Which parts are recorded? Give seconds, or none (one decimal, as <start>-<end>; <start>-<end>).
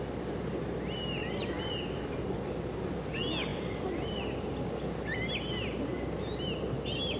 0.0-1.2; 2.0-3.5; 4.2-7.2